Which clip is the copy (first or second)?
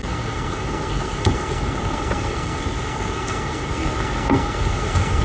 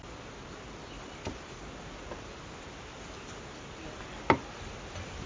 first